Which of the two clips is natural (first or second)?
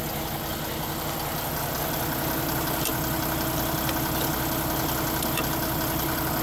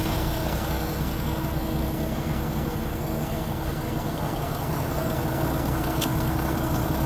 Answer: first